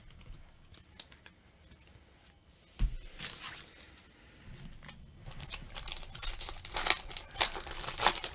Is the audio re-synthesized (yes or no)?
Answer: no